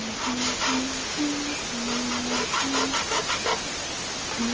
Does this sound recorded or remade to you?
recorded